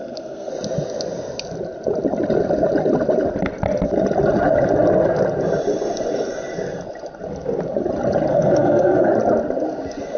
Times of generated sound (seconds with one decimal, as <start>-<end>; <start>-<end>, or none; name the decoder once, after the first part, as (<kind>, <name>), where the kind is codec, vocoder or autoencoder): 0.0-0.5 (codec, SNAC); 8.3-9.1